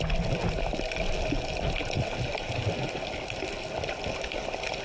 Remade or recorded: recorded